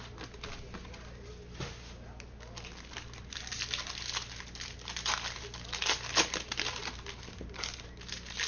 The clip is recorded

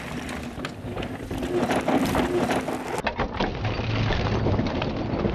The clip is recorded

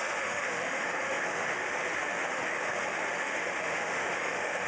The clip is remade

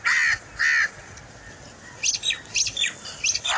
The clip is recorded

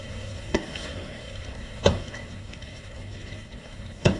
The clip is remade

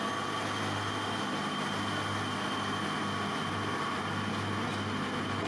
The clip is recorded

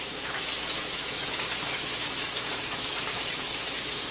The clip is remade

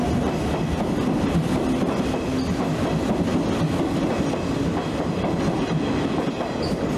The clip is recorded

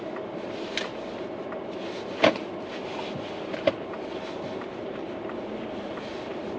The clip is recorded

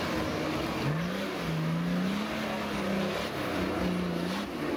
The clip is recorded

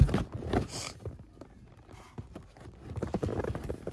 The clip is recorded